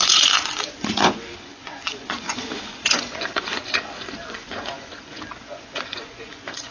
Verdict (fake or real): fake